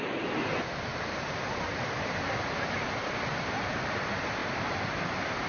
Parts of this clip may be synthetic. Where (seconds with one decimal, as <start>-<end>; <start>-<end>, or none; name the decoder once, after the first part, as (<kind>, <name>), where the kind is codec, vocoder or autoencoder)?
0.9-4.0 (vocoder, BigVGAN v2); 4.4-5.5